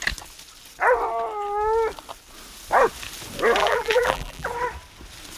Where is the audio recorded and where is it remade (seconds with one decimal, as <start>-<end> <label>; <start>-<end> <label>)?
0.0-3.6 recorded; 3.6-4.5 remade; 4.5-5.4 recorded